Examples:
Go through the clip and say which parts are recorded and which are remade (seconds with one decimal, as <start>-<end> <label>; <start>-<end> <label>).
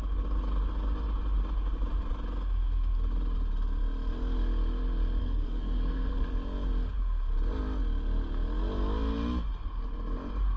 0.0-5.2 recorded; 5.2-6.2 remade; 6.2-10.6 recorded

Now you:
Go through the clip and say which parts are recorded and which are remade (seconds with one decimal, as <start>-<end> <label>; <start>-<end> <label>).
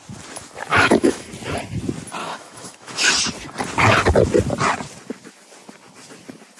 0.0-0.7 recorded; 0.7-1.3 remade; 1.3-2.2 recorded; 2.2-3.1 remade; 3.1-6.6 recorded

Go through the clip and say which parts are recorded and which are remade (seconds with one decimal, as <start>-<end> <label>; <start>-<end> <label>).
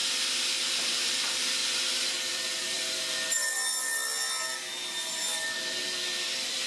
0.0-0.9 recorded; 0.9-1.6 remade; 1.6-2.3 recorded; 2.3-3.5 remade; 3.5-5.2 recorded; 5.2-6.7 remade